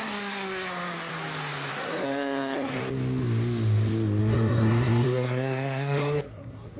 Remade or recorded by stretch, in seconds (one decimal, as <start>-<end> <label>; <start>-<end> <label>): 0.0-1.1 remade; 1.1-1.7 recorded; 1.7-2.8 remade; 2.8-4.2 recorded; 4.2-6.8 remade